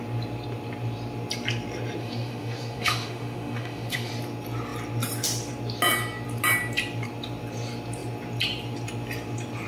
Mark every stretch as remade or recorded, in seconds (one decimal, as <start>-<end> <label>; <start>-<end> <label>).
0.0-2.0 recorded; 2.0-4.1 remade; 4.1-9.7 recorded